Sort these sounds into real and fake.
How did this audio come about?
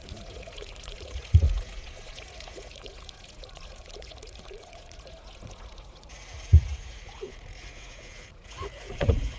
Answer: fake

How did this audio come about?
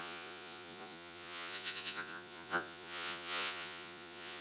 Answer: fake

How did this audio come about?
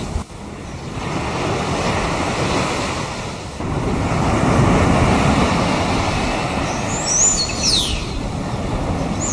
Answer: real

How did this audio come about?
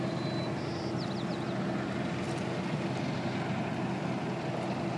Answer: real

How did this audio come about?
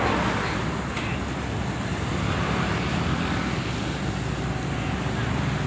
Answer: real